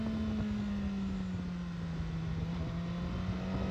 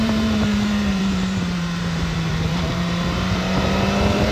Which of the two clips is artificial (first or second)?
second